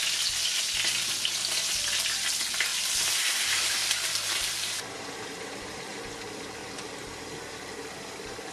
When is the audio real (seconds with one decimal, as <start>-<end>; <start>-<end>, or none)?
0.0-2.7; 6.0-8.5